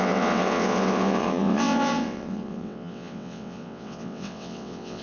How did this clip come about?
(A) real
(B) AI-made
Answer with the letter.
B